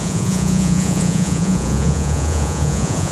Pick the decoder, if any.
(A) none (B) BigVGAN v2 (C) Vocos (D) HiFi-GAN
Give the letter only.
C